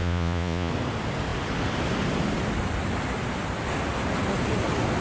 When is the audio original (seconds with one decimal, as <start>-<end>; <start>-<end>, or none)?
0.7-5.0